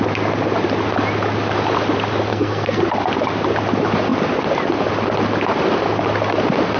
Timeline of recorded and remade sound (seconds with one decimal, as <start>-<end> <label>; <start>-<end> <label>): 0.0-2.3 recorded; 2.3-2.8 remade; 2.8-6.8 recorded